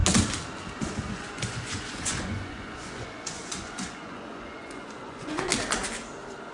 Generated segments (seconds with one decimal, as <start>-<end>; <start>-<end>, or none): 1.1-5.5